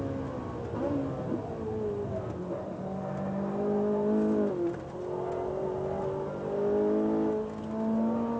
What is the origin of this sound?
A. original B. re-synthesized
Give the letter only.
A